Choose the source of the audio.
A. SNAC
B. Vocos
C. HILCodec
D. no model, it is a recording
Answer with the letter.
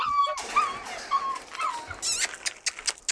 D